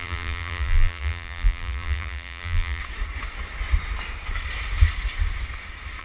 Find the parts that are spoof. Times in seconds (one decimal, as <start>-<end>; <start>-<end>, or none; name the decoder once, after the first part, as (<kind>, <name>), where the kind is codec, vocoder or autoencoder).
0.0-2.8 (vocoder, BigVGAN v2)